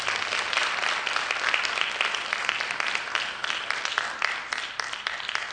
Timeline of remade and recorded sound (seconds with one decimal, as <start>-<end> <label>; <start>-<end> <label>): 0.0-5.5 recorded